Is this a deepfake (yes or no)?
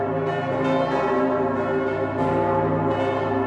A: no